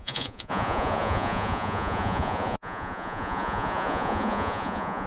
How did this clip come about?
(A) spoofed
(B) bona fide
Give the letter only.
A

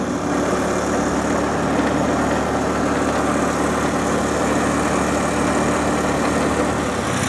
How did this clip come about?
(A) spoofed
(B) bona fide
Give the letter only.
B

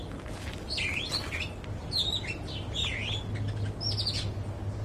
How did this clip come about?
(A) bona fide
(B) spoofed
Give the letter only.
A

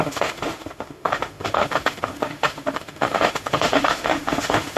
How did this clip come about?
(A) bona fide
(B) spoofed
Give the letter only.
B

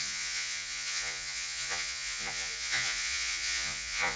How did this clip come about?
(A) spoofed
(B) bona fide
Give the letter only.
A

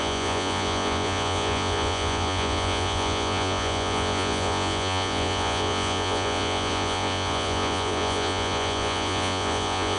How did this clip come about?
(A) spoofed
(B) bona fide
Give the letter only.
A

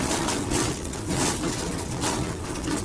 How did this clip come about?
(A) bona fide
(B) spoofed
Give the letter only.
B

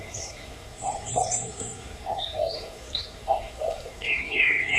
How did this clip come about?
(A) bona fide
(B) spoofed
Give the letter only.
B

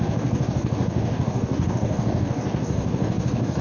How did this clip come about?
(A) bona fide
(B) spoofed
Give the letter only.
B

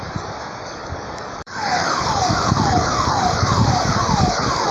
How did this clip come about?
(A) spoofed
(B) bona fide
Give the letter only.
A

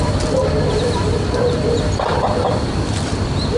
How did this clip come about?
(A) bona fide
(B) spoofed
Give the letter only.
B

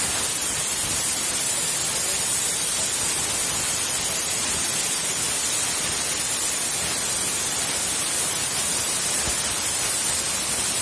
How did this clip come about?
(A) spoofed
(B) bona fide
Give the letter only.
B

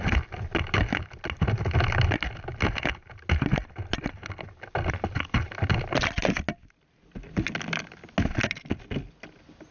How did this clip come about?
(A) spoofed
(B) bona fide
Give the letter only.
B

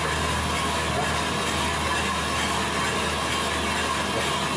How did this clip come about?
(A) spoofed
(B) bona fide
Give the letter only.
B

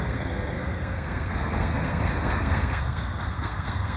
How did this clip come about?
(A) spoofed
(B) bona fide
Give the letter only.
A